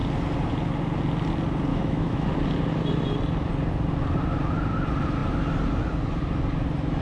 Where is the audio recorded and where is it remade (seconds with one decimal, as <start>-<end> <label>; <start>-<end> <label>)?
0.0-1.7 recorded; 1.7-2.3 remade; 2.3-7.0 recorded